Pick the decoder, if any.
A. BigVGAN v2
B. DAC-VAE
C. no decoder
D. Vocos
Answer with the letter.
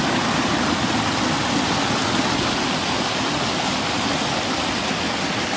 C